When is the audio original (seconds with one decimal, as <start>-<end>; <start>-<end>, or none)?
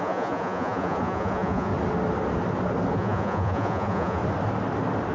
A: 1.7-2.9; 4.2-5.1